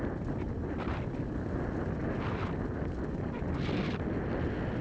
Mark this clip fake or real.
real